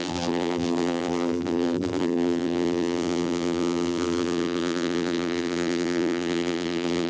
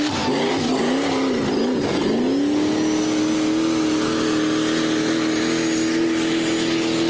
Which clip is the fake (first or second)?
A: first